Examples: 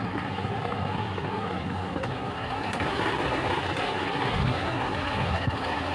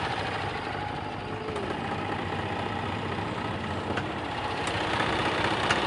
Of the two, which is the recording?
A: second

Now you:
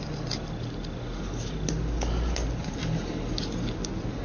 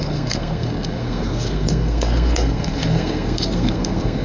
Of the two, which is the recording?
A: first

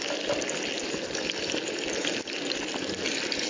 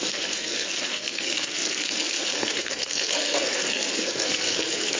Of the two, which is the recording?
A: first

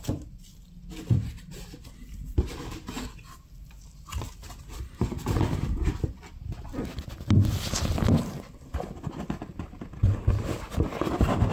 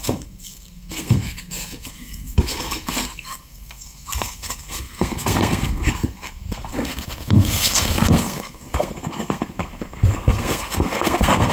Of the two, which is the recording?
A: first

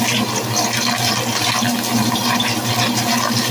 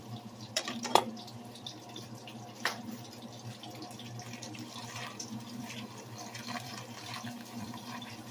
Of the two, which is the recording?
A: first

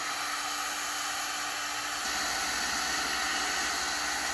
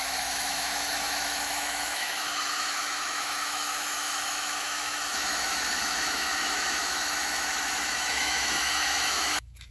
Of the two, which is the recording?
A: first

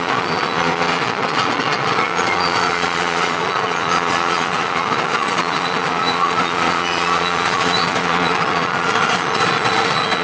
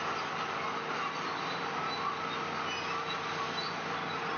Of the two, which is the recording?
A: second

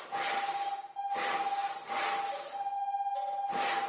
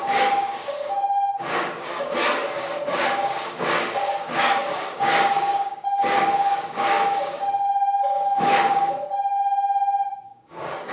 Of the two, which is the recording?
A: first